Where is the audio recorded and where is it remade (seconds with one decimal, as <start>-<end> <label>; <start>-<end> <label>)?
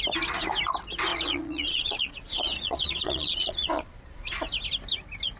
0.0-1.1 recorded; 1.1-4.3 remade; 4.3-5.4 recorded